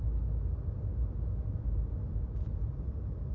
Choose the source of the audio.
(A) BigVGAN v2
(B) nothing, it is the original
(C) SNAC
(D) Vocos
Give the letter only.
B